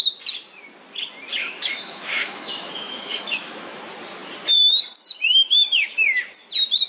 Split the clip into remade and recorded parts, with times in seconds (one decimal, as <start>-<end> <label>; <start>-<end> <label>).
0.0-1.4 recorded; 1.4-3.8 remade; 3.8-5.3 recorded; 5.3-6.2 remade; 6.2-6.9 recorded